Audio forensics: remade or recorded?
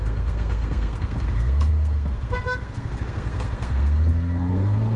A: remade